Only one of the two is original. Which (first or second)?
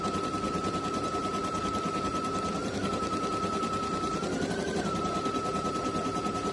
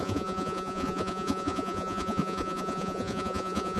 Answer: first